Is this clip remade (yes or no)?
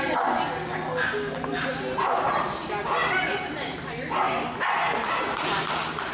no